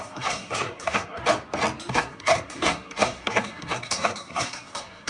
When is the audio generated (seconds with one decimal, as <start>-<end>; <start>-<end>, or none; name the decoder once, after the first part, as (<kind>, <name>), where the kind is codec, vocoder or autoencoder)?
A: 0.0-1.2 (codec, SNAC); 1.9-5.1